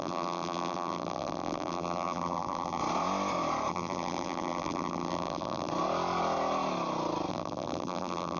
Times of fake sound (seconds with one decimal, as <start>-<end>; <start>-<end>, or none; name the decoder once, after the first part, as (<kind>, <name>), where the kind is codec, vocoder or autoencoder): 0.0-2.8 (vocoder, BigVGAN v2); 3.7-5.7; 7.3-8.4